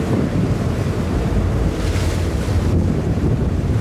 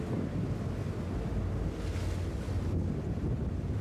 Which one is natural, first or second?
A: second